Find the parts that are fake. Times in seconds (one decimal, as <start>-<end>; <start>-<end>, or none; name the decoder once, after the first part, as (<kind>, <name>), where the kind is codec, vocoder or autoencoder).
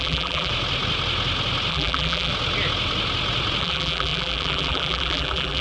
0.0-0.5 (vocoder, BigVGAN v2); 1.7-2.3; 3.6-5.6